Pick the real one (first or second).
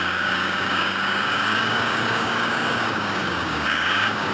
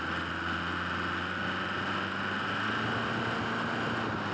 second